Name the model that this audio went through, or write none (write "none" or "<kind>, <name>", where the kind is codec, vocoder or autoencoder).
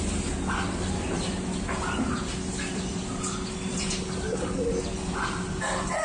none